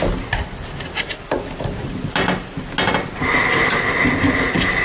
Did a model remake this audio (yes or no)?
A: no